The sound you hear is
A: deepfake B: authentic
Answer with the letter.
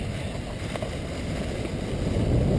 B